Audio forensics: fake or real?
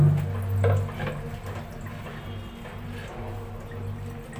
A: real